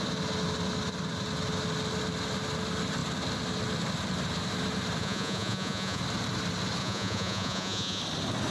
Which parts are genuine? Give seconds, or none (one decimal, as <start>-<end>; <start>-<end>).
0.0-5.0; 6.0-6.8; 8.0-8.5